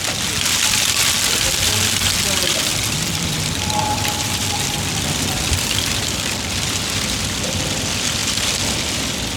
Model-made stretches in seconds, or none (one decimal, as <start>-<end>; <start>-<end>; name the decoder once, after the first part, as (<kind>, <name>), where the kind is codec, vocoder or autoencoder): 2.7-6.8 (vocoder, BigVGAN v2)